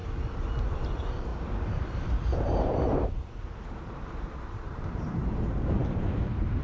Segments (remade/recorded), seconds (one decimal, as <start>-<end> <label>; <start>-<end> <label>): 0.0-0.6 recorded; 0.6-6.6 remade